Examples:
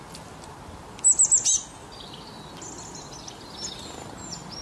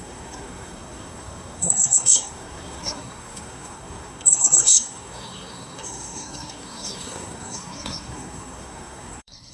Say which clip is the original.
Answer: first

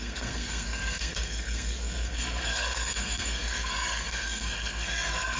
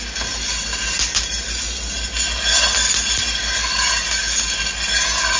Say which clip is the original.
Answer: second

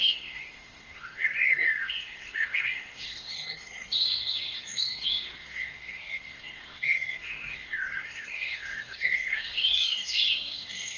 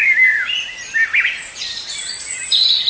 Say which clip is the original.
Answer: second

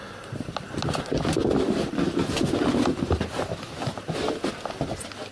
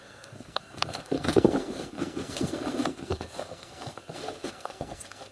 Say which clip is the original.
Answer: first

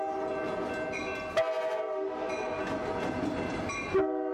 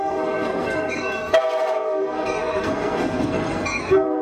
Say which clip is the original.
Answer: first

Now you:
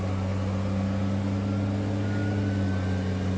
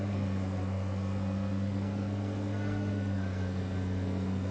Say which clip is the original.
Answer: first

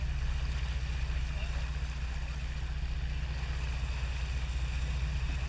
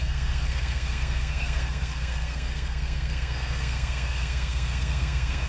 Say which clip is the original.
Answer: first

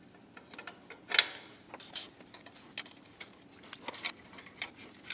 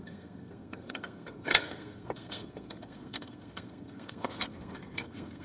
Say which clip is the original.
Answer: first